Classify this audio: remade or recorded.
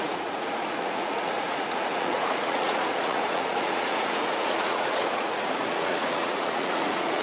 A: remade